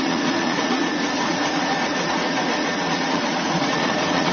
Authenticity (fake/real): fake